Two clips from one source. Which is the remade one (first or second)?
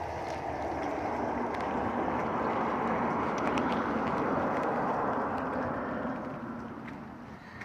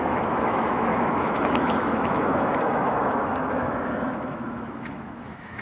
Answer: second